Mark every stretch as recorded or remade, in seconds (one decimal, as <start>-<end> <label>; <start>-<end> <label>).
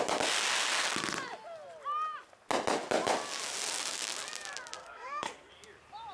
0.0-4.8 recorded; 4.8-5.5 remade; 5.5-6.1 recorded